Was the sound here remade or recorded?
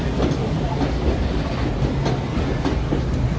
recorded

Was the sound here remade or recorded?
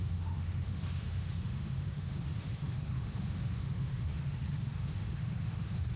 remade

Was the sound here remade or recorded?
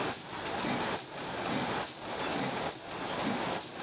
recorded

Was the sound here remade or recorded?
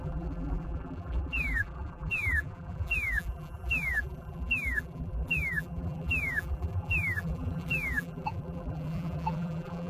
remade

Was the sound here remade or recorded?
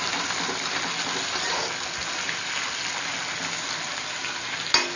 recorded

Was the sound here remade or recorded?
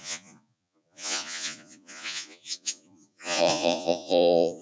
remade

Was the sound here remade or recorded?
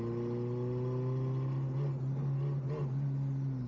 recorded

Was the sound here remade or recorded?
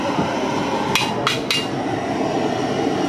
recorded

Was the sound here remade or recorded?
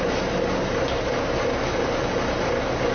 recorded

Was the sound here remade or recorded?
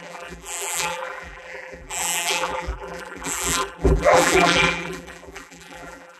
remade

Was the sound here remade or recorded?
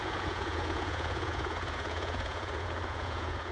remade